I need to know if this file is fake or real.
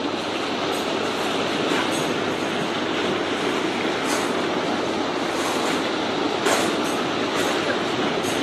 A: real